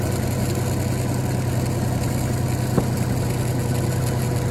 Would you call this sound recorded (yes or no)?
yes